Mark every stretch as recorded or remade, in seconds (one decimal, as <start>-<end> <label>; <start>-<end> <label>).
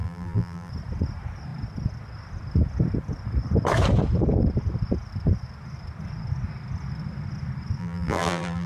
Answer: 0.0-0.7 remade; 0.7-7.8 recorded; 7.8-8.7 remade